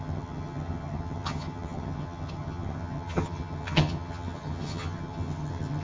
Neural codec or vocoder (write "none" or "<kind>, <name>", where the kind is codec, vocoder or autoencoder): vocoder, HiFi-GAN